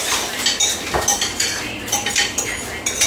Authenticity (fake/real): real